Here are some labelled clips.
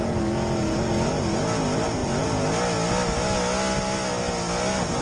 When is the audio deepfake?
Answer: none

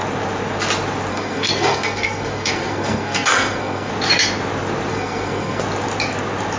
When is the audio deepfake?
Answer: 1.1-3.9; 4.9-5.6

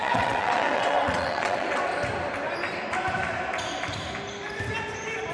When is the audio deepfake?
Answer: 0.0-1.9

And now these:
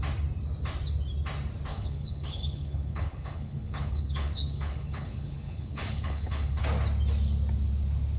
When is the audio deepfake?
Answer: 1.7-6.6

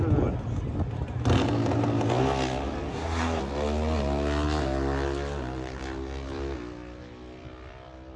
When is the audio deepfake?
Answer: 2.9-3.4

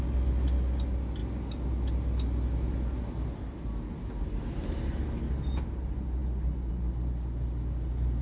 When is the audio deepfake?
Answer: none

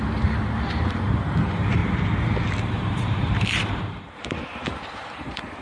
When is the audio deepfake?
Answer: 0.0-1.8; 2.7-5.6